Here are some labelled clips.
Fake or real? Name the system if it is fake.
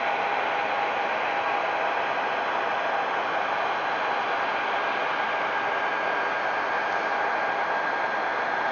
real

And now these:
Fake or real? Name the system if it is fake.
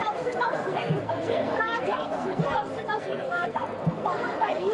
fake, codec, SNAC